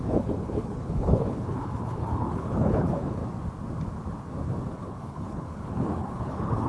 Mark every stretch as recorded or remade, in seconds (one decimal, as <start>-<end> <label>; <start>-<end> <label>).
0.0-3.2 remade; 3.2-4.7 recorded; 4.7-6.7 remade